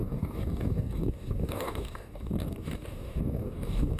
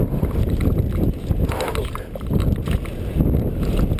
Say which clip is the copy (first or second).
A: first